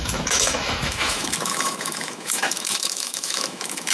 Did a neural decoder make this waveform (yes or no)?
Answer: yes